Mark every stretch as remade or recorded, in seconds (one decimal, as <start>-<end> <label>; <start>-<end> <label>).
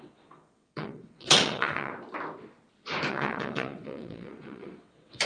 0.0-1.9 remade; 1.9-3.1 recorded; 3.1-5.3 remade